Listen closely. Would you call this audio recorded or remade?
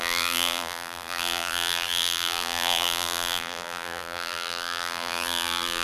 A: remade